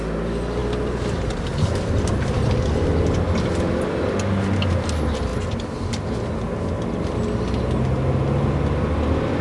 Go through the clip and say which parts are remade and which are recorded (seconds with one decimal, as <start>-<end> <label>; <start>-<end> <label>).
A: 0.0-9.4 recorded